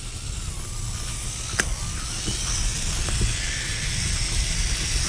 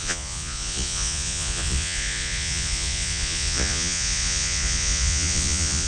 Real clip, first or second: first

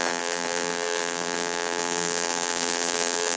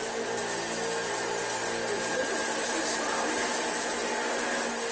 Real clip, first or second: second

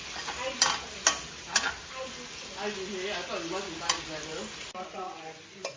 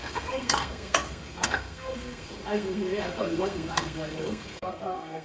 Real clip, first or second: first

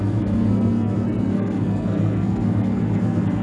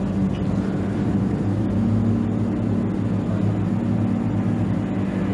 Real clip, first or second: second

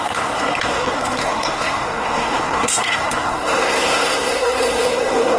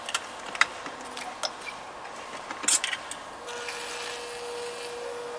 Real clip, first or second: second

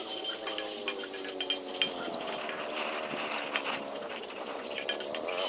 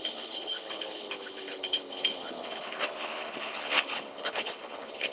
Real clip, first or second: first